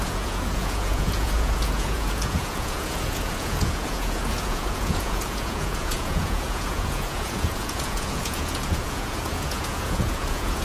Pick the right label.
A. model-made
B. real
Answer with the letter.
A